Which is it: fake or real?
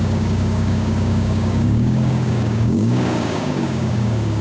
fake